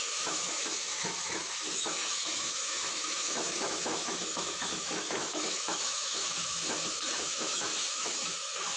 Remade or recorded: remade